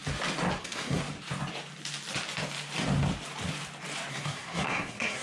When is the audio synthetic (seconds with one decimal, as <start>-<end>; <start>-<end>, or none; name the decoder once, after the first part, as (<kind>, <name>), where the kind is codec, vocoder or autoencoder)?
0.6-1.0 (codec, SNAC); 4.1-5.2